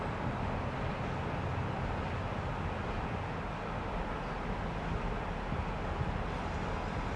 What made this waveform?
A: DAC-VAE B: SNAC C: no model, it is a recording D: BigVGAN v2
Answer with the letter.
C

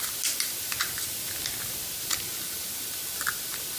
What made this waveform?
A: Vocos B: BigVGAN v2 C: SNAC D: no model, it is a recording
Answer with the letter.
D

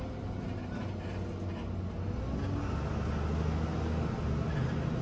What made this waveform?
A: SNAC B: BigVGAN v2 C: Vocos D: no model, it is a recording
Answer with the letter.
D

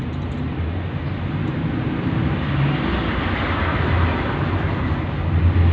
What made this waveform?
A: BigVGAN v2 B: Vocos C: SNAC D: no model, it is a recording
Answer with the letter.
D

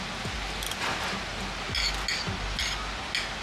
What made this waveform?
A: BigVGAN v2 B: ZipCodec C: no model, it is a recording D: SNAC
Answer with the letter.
C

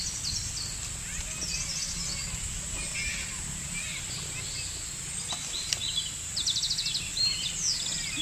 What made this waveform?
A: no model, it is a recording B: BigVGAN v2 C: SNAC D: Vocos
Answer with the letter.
A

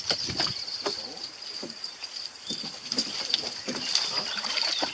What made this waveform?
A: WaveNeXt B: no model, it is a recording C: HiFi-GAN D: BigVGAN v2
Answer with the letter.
D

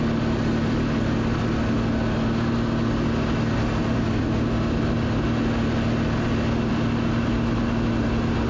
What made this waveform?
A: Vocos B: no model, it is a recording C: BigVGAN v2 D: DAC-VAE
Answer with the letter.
B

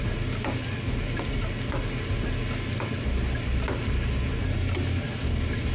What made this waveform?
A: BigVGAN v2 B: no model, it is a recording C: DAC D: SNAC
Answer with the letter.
B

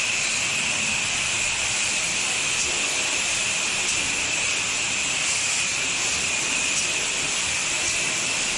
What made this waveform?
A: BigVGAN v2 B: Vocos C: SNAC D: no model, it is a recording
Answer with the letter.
A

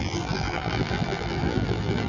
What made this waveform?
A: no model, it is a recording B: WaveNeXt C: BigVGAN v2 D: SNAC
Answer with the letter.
C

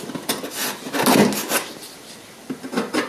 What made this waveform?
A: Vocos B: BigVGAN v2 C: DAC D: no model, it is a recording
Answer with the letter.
D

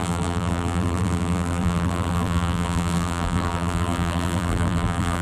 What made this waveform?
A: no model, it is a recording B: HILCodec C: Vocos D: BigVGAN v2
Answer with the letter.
D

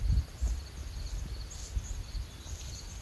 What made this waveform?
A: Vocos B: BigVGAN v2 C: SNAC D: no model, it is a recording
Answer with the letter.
D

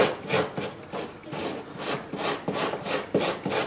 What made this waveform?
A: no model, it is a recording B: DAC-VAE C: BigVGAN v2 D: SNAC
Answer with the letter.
A